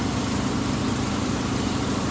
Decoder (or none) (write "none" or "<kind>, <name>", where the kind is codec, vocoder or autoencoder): vocoder, BigVGAN v2